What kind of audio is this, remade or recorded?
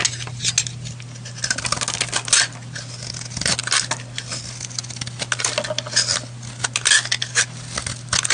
recorded